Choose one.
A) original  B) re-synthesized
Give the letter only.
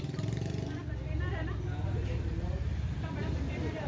B